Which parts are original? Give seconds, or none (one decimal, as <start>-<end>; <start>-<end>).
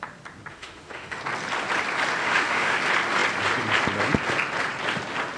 0.0-0.5; 1.2-2.2; 2.8-5.4